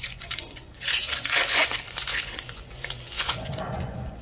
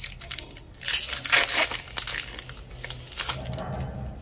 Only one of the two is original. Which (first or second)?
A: second